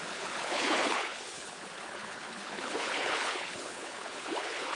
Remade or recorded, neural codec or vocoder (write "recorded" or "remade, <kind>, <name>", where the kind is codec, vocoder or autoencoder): remade, codec, HILCodec